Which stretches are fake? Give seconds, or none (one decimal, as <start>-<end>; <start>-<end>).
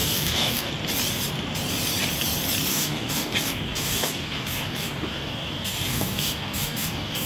0.0-0.7; 2.7-7.3